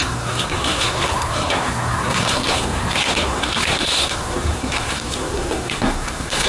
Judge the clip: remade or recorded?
remade